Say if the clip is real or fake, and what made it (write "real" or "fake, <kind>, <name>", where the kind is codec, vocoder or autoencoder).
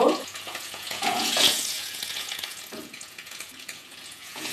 fake, vocoder, Vocos